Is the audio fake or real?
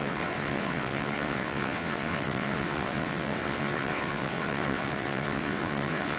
fake